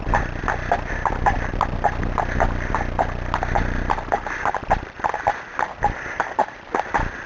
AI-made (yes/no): no